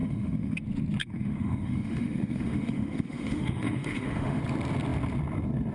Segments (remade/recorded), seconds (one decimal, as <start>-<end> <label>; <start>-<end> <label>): 0.0-0.6 remade; 0.6-1.0 recorded; 1.0-4.4 remade; 4.4-5.7 recorded